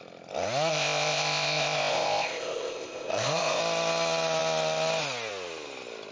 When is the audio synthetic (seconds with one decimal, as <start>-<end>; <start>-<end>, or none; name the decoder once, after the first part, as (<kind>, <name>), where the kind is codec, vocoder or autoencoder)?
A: 0.7-3.6 (codec, ZipCodec)